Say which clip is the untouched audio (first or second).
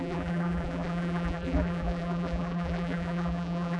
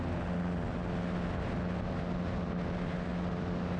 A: second